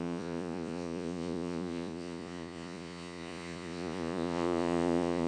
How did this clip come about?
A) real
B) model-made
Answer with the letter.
B